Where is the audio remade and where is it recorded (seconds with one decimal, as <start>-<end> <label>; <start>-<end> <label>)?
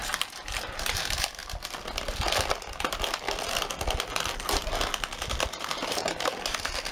0.0-1.4 remade; 1.4-5.5 recorded; 5.5-6.9 remade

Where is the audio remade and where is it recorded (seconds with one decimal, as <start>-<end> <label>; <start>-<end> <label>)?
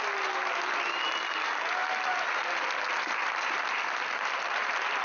0.0-5.0 recorded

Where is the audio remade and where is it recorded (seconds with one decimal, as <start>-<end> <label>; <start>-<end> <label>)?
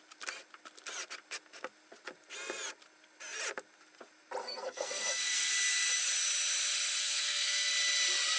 0.0-4.4 recorded; 4.4-5.5 remade; 5.5-7.0 recorded; 7.0-7.7 remade; 7.7-8.4 recorded